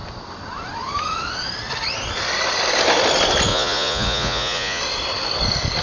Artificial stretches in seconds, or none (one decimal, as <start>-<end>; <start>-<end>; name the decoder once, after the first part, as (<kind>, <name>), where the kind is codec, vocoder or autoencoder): 3.5-4.8 (vocoder, Vocos)